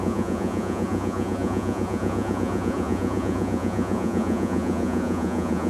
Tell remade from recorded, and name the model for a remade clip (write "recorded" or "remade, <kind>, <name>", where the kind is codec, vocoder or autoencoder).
remade, vocoder, Vocos